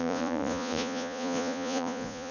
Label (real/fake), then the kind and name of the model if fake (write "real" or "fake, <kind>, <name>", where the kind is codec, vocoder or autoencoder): fake, vocoder, Vocos